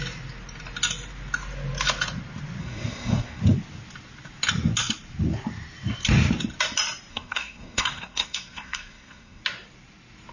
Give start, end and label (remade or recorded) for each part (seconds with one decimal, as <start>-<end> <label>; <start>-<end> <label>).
0.0-2.6 recorded; 2.6-3.4 remade; 3.4-7.1 recorded; 7.1-9.4 remade; 9.4-10.3 recorded